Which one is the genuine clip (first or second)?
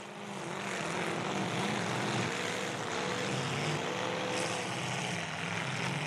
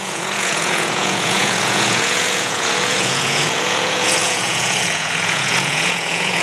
first